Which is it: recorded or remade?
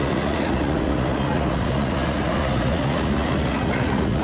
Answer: remade